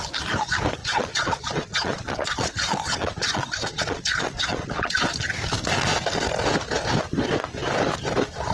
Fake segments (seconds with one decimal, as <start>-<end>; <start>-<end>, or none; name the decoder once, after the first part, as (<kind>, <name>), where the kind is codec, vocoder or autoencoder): 0.8-4.9 (vocoder, Vocos)